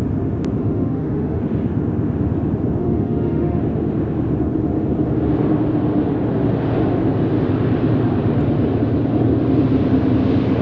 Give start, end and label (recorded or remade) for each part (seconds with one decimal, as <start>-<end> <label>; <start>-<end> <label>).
0.0-0.6 recorded; 0.6-1.4 remade; 1.4-2.8 recorded; 2.8-3.6 remade; 3.6-10.6 recorded